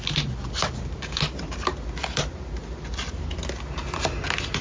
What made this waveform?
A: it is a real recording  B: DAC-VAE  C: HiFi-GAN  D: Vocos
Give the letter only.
A